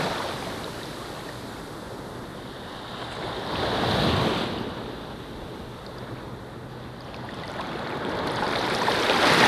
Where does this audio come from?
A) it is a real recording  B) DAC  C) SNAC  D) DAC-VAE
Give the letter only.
A